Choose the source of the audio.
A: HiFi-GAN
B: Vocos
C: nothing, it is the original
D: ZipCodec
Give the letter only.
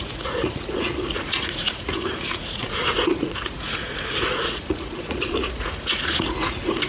B